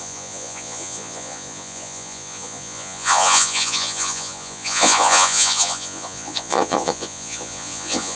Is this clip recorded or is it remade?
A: remade